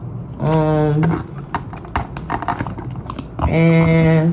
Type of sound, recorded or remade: recorded